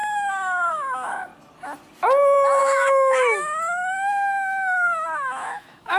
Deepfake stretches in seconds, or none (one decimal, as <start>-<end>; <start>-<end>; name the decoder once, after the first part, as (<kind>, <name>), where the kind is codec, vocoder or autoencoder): 0.0-1.3 (autoencoder, DAC-VAE); 2.6-6.0